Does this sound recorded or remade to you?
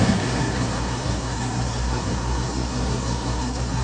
remade